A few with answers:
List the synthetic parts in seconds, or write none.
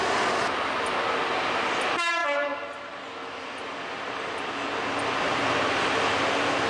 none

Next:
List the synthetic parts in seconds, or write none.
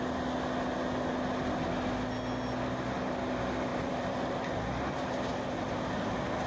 3.7-4.3